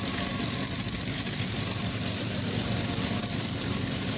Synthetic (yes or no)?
yes